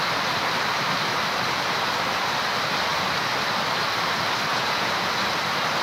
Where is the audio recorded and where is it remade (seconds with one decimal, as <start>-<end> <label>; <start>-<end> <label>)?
0.0-4.5 recorded; 4.5-5.1 remade; 5.1-5.8 recorded